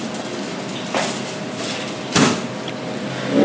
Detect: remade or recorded recorded